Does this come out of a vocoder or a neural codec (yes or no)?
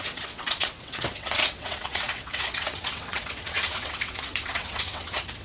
yes